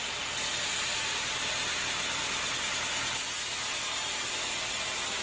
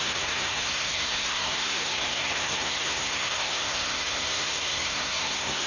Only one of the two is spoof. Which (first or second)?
second